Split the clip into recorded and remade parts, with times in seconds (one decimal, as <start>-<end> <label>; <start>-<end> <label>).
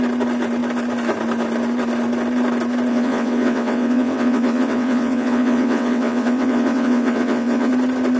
0.0-2.9 recorded; 2.9-7.7 remade; 7.7-8.2 recorded